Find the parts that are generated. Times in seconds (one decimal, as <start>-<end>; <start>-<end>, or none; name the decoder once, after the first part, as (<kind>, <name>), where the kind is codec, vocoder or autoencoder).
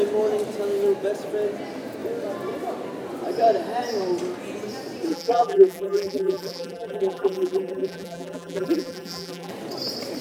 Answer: 5.1-9.5 (vocoder, BigVGAN v2)